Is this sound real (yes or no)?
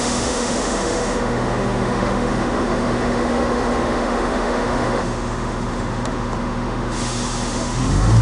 no